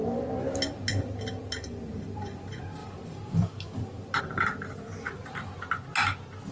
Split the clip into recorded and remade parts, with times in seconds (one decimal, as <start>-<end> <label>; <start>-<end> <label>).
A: 0.0-5.5 remade; 5.5-6.5 recorded